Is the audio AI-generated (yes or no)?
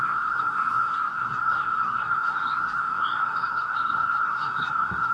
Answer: yes